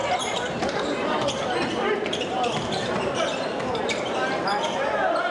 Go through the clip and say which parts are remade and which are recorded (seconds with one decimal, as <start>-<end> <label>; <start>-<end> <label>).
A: 0.0-4.5 remade; 4.5-5.3 recorded